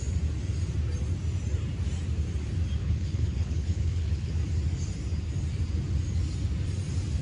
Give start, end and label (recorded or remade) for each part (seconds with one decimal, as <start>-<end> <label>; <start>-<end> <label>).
0.0-2.8 recorded; 2.8-4.3 remade; 4.3-7.2 recorded